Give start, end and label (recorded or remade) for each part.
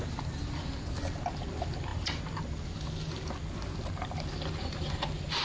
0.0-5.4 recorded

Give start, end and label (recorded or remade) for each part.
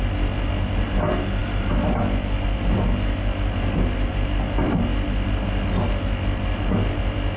0.0-7.4 recorded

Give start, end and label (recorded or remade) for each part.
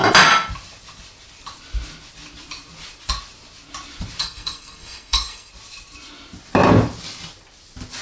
0.0-4.2 recorded; 4.2-5.5 remade; 5.5-8.0 recorded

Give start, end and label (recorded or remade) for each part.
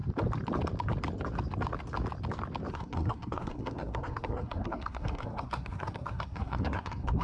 0.0-2.7 recorded; 2.7-7.2 remade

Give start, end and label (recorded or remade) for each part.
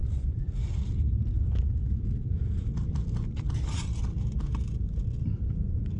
0.0-6.0 recorded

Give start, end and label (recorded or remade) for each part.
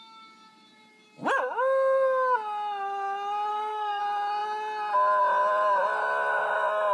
0.0-3.5 recorded; 3.5-4.0 remade; 4.0-6.9 recorded